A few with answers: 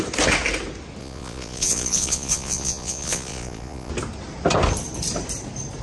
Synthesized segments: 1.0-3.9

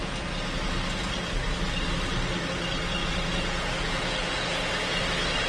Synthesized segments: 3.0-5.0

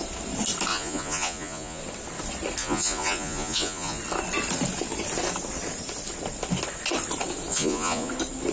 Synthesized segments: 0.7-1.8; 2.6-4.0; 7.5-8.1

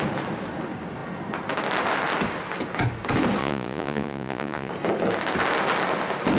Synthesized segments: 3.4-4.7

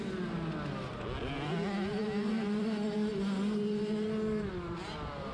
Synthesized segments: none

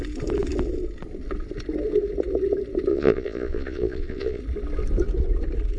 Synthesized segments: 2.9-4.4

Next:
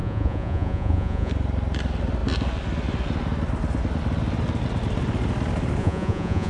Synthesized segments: 0.0-1.3; 5.8-6.5